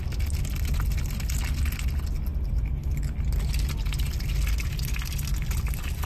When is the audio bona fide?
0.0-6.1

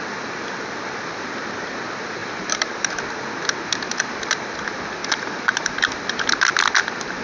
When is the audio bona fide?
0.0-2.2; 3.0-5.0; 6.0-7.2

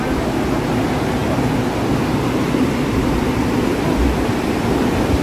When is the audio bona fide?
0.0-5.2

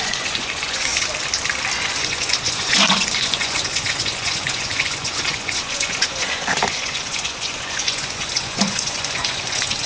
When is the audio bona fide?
0.9-1.8